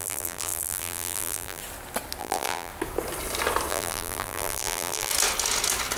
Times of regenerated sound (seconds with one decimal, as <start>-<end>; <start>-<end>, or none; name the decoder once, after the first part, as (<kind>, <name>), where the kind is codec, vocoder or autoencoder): 0.0-1.6 (vocoder, BigVGAN v2); 2.2-2.7; 3.7-5.1